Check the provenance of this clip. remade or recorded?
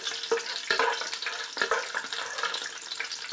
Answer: recorded